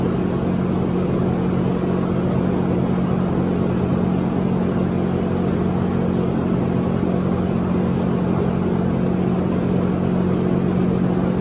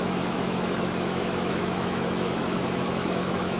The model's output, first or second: second